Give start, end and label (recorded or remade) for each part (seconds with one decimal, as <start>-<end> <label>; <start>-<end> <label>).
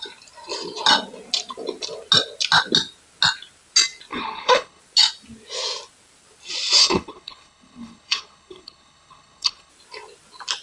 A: 0.0-4.1 recorded; 4.1-4.8 remade; 4.8-6.8 recorded; 6.8-9.7 remade; 9.7-10.6 recorded